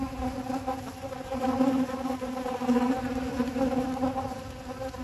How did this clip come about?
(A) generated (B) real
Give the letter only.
B